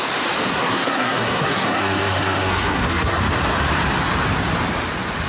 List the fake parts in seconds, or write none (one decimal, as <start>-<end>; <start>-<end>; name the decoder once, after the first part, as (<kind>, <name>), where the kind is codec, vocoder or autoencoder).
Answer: 0.5-3.2 (codec, SNAC)